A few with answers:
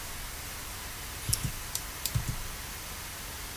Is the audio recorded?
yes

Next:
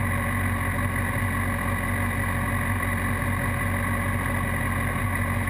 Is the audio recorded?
yes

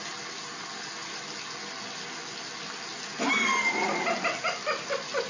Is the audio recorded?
yes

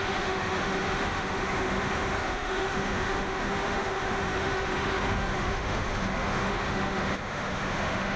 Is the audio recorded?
no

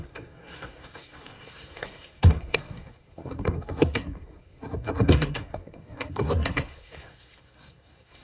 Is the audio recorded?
no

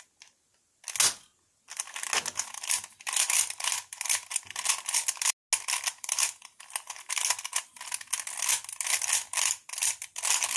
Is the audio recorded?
yes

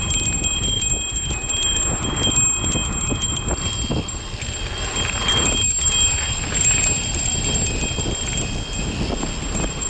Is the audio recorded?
yes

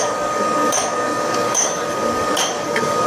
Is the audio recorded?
no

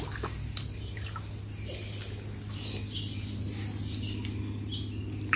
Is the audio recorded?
yes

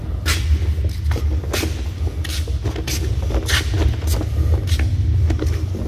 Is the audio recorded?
yes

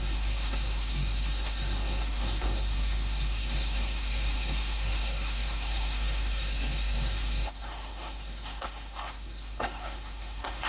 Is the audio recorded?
no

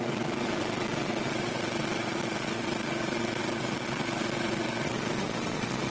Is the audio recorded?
no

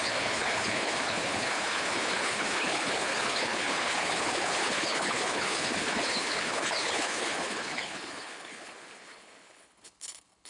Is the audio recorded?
no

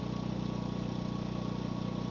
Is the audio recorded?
yes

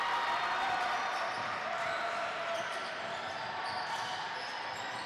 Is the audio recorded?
yes